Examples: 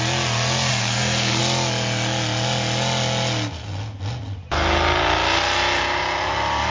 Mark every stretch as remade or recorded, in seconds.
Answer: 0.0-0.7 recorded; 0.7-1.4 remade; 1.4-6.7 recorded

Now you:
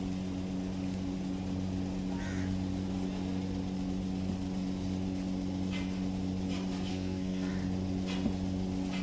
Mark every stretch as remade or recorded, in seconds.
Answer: 0.0-6.9 recorded; 6.9-7.5 remade; 7.5-9.0 recorded

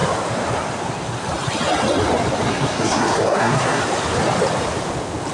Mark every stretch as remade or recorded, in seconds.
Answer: 0.0-2.5 recorded; 2.5-3.8 remade; 3.8-5.3 recorded

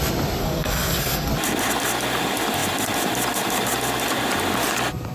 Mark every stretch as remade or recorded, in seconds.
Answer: 0.0-0.4 recorded; 0.4-1.3 remade; 1.3-5.1 recorded

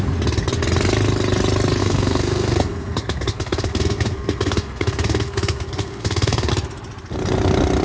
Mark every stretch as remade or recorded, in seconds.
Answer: 0.0-1.8 recorded; 1.8-6.5 remade; 6.5-7.8 recorded